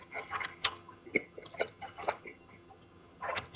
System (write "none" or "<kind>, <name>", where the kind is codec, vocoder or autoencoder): vocoder, HiFi-GAN